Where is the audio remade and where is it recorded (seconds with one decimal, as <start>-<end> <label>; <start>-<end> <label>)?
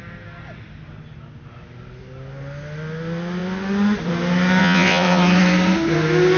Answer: 0.0-4.6 recorded; 4.6-5.2 remade; 5.2-6.4 recorded